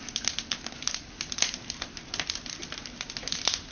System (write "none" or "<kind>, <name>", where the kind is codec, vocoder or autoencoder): none